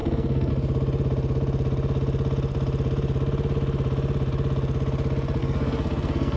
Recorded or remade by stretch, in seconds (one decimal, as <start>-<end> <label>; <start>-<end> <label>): 0.0-0.5 remade; 0.5-5.4 recorded; 5.4-6.4 remade